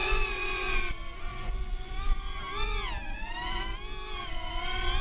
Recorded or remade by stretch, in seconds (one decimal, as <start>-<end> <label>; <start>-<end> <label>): 0.0-0.8 remade; 0.8-1.3 recorded; 1.3-1.9 remade; 1.9-5.0 recorded